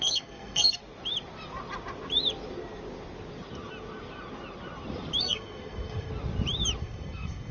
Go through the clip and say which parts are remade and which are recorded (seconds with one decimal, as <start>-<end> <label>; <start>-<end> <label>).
0.0-0.8 remade; 0.8-5.2 recorded; 5.2-6.1 remade; 6.1-6.8 recorded; 6.8-7.5 remade